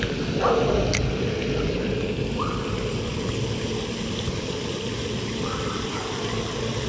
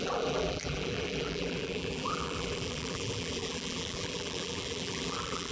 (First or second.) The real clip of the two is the first